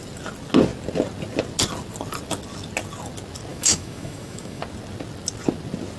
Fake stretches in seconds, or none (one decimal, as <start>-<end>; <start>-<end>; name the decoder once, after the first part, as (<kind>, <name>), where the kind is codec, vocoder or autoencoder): 3.5-4.6 (autoencoder, DAC-VAE)